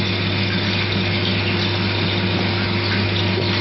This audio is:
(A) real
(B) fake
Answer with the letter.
A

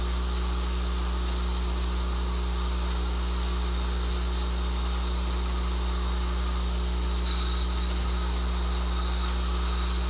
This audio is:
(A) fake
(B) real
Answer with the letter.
B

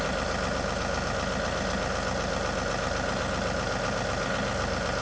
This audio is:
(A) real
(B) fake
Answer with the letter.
A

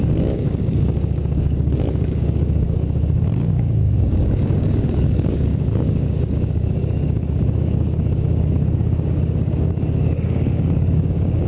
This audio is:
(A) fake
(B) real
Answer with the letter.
A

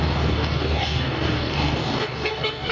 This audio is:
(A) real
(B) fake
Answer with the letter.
B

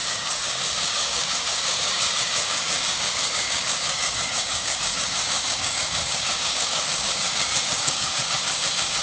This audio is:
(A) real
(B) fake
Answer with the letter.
B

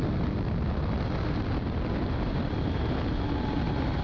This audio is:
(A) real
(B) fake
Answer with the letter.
A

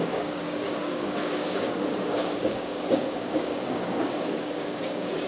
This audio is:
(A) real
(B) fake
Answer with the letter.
B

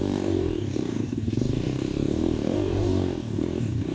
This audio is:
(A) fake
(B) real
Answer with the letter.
A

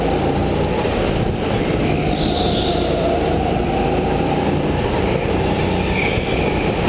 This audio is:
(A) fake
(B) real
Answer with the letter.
B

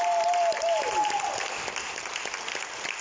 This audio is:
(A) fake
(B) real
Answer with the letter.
B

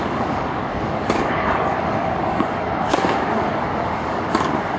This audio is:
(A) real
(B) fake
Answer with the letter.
B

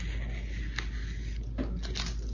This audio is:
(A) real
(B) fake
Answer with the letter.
A